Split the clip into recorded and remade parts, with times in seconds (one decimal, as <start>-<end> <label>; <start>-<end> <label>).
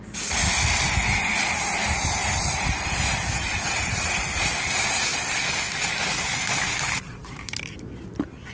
0.0-2.2 recorded; 2.2-5.3 remade; 5.3-7.2 recorded; 7.2-7.9 remade; 7.9-8.5 recorded